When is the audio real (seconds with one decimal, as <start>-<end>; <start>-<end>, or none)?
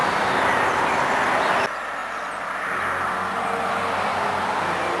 0.0-5.0